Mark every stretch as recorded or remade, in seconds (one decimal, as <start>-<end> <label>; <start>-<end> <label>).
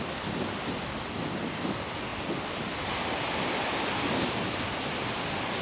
0.0-5.6 recorded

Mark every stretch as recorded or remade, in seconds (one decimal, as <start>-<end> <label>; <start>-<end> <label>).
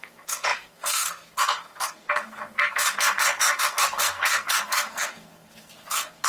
0.0-6.3 remade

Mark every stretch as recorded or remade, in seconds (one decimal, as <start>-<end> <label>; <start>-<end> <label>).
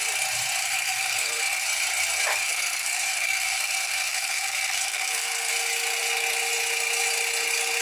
0.0-0.6 recorded; 0.6-1.6 remade; 1.6-2.3 recorded; 2.3-5.5 remade; 5.5-7.8 recorded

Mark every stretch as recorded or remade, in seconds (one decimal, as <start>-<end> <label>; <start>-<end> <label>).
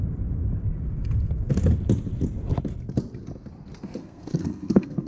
0.0-4.0 recorded; 4.0-5.1 remade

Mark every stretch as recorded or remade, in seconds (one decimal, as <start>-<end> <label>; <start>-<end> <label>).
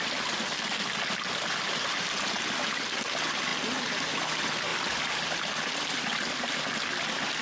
0.0-7.4 recorded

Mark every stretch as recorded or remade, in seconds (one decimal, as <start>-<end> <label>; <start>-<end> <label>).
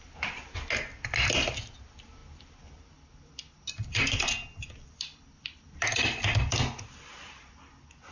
0.0-8.1 recorded